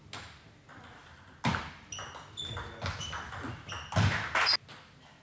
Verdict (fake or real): real